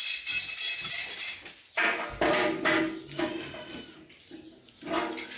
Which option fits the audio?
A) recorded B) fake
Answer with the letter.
A